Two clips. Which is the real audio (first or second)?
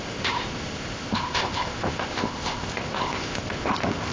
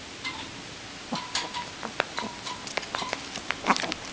second